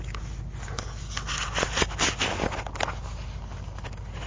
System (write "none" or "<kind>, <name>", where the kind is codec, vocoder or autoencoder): none